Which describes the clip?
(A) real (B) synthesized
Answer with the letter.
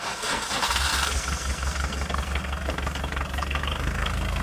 B